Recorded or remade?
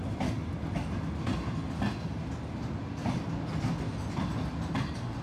recorded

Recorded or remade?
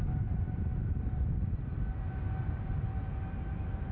recorded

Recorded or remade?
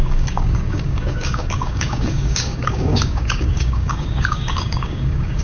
remade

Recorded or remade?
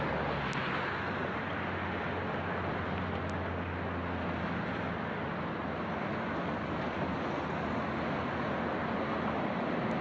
recorded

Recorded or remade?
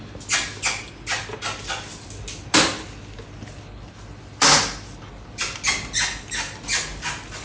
recorded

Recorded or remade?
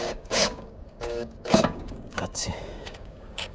remade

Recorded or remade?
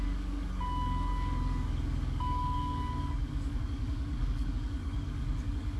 remade